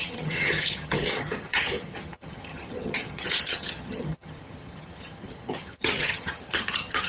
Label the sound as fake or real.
fake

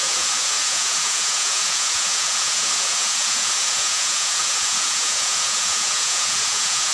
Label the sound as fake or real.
fake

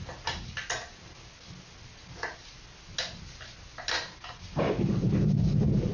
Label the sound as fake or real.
real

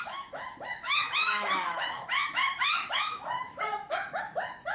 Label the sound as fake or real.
fake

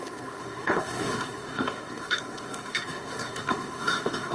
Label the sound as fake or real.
fake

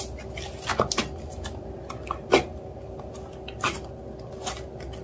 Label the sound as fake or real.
real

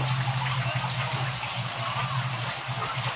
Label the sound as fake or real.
real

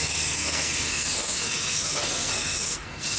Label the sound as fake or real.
fake